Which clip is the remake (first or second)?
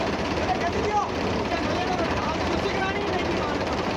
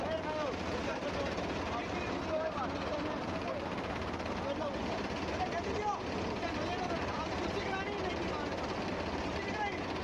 first